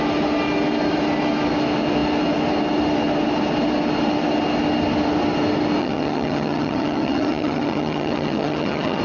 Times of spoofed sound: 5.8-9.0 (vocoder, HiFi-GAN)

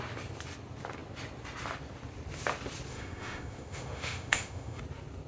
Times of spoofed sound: 2.9-4.8 (autoencoder, DAC-VAE)

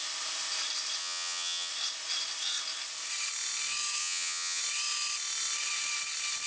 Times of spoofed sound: 1.0-1.7 (vocoder, HiFi-GAN); 4.0-4.6

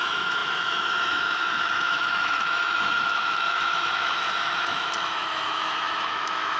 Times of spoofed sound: 0.0-6.6 (autoencoder, DAC-VAE)

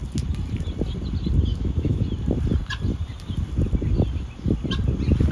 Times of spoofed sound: 1.5-2.0 (autoencoder, DAC-VAE)

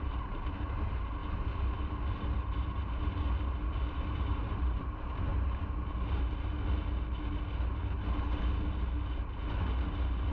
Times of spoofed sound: 0.0-1.2 (vocoder, BigVGAN v2); 3.7-5.3

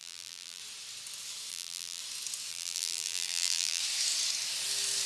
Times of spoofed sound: 0.0-0.6 (vocoder, BigVGAN v2); 1.5-2.0; 2.5-3.8

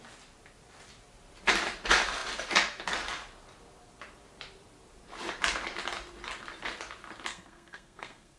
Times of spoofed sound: 7.3-8.4 (codec, SNAC)